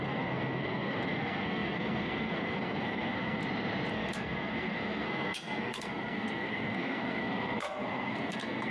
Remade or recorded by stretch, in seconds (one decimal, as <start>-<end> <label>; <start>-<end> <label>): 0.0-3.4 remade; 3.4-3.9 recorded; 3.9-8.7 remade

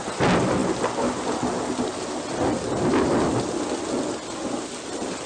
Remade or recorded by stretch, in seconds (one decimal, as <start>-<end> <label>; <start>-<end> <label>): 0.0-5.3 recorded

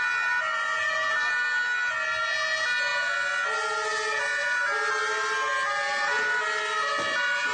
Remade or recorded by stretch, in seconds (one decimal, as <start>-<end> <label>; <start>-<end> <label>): 0.0-7.5 recorded